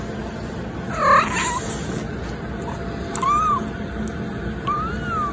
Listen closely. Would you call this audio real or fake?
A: real